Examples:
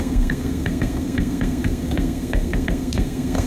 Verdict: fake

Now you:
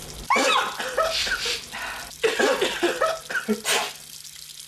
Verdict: real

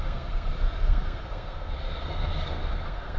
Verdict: fake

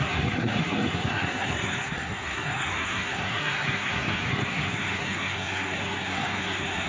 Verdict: fake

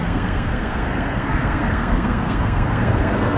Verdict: fake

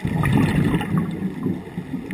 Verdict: real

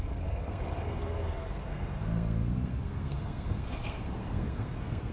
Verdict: fake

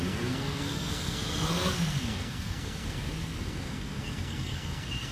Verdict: fake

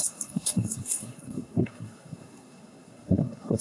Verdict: fake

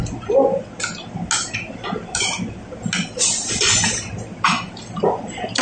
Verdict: real